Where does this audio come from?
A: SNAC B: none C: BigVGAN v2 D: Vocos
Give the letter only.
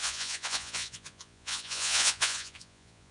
D